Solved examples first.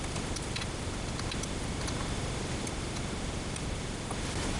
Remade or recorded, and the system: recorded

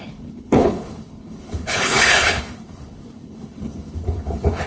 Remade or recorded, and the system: remade, codec, HILCodec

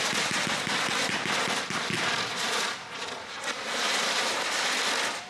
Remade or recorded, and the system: recorded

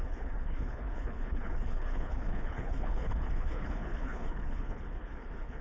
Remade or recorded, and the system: remade, codec, HILCodec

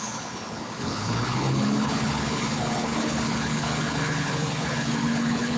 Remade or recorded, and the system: remade, codec, HILCodec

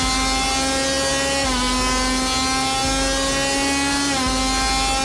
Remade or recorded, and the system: recorded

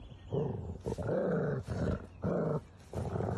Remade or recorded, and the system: recorded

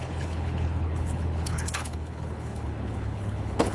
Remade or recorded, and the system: remade, codec, HILCodec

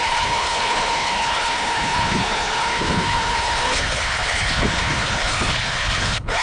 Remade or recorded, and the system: remade, codec, HILCodec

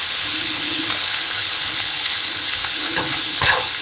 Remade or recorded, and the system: remade, codec, HILCodec